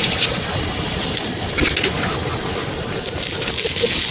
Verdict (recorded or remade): recorded